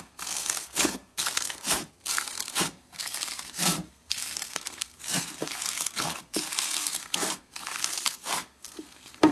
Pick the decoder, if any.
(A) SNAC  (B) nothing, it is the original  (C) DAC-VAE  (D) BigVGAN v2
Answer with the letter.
A